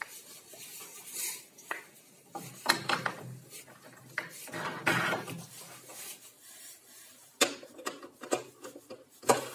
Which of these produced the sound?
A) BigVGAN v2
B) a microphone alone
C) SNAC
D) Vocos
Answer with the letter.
B